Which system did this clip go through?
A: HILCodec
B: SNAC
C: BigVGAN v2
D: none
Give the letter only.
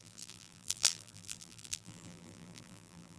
C